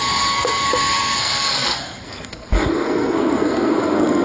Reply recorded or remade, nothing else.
remade